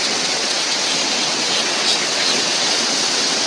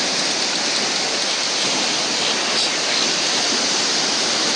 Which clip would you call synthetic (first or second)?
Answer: first